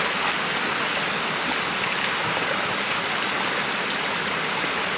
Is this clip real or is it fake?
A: real